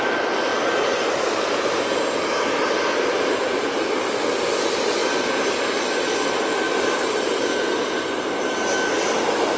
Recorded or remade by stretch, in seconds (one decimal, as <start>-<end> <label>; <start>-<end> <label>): 0.0-9.6 recorded